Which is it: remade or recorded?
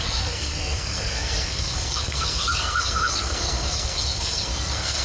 remade